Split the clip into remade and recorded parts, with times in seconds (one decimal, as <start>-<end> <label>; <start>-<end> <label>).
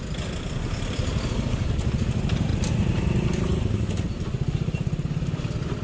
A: 0.0-5.8 recorded